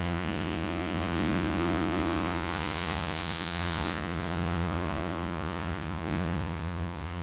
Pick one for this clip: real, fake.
fake